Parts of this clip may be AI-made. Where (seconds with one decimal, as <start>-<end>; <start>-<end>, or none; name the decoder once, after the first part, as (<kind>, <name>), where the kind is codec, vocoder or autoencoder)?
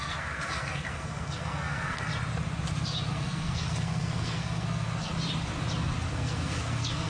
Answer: 0.0-2.1 (codec, SNAC); 3.1-5.1; 6.1-7.1